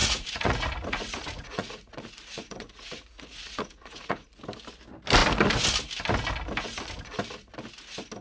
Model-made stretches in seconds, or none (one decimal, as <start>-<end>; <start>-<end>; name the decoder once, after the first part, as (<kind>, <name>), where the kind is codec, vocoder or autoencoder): 0.0-4.4 (vocoder, Vocos)